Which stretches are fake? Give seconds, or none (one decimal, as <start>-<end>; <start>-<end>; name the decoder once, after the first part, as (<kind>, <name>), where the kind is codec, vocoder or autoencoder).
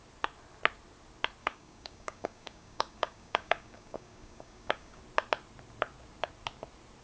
1.4-5.0 (codec, DAC)